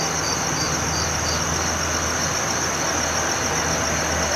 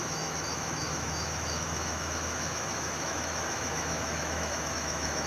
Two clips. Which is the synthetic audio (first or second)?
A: second